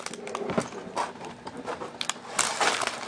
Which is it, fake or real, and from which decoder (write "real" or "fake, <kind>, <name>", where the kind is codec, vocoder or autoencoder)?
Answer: real